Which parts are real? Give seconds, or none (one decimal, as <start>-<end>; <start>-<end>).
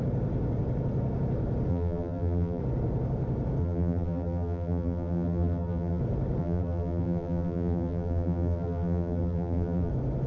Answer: 0.0-1.7; 2.6-3.6; 6.0-6.4; 9.9-10.3